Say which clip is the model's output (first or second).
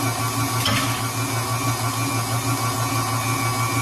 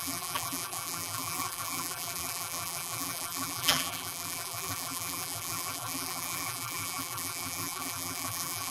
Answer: second